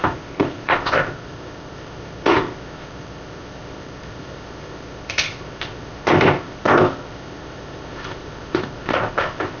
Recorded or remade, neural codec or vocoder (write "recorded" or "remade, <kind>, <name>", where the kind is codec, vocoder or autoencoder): remade, codec, ZipCodec